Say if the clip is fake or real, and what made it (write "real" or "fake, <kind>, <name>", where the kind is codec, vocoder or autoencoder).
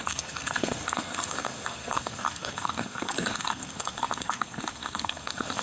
fake, codec, SNAC